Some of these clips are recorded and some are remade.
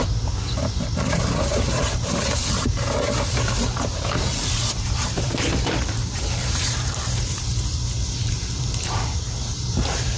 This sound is remade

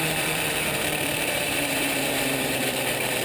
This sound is remade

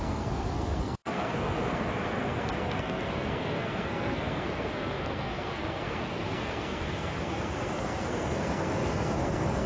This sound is remade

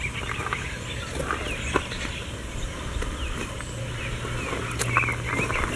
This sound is recorded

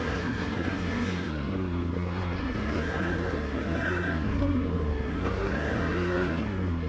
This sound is remade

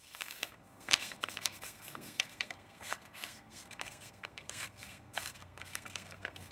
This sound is remade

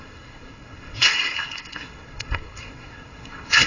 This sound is remade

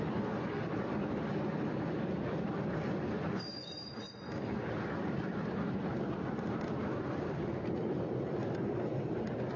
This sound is recorded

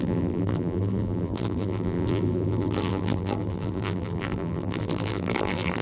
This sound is remade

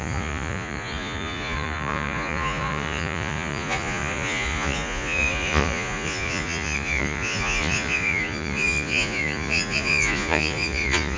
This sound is remade